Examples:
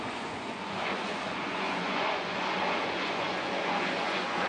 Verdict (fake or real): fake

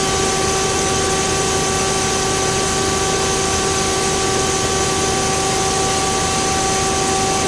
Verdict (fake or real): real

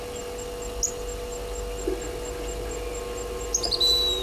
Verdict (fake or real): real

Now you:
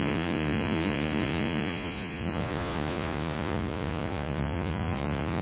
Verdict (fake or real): fake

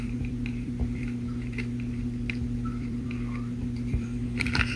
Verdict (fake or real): fake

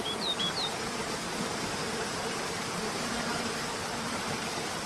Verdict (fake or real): fake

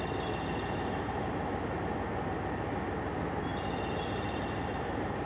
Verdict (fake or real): real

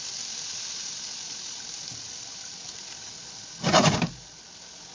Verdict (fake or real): real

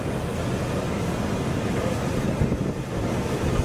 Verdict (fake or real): real